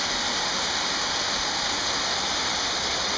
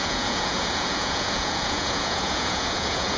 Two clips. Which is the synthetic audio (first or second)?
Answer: second